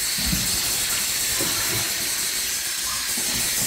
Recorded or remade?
recorded